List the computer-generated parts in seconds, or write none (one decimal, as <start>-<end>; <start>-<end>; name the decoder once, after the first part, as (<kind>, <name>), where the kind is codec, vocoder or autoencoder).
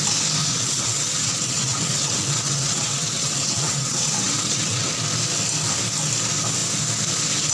0.4-4.9 (vocoder, WaveNeXt)